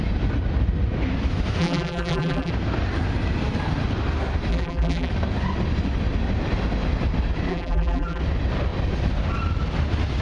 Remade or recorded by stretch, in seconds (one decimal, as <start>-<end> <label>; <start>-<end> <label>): 0.0-1.6 recorded; 1.6-2.5 remade; 2.5-4.5 recorded; 4.5-5.1 remade; 5.1-7.5 recorded; 7.5-8.2 remade; 8.2-10.2 recorded